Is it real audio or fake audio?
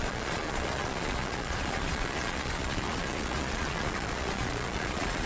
fake